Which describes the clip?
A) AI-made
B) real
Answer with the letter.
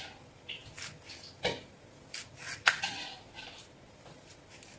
B